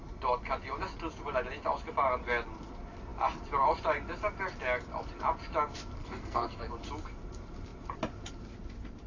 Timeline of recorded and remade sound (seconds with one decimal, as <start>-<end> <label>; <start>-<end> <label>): 0.0-6.0 recorded; 6.0-6.7 remade; 6.7-9.1 recorded